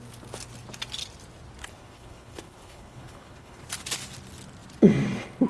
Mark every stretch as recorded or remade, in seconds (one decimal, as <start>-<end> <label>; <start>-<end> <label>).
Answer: 0.0-1.6 recorded; 1.6-3.6 remade; 3.6-5.5 recorded